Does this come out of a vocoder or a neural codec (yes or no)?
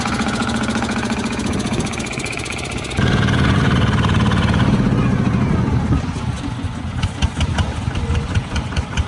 yes